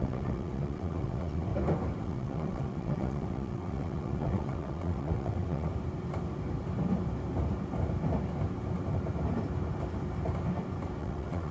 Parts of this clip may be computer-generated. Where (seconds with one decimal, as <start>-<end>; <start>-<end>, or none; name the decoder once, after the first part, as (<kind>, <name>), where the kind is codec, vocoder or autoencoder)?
0.0-1.5 (vocoder, WaveNeXt); 2.0-5.7; 11.0-11.5